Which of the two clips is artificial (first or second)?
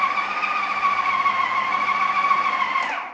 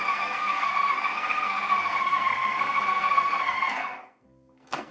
second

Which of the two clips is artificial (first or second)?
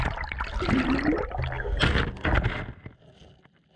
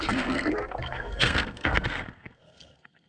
second